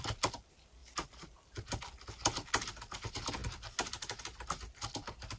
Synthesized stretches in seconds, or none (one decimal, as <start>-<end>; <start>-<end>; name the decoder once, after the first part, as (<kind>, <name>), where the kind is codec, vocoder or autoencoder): none